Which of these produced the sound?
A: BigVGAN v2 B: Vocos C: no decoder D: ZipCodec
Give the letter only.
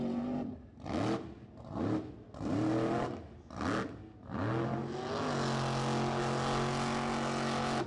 C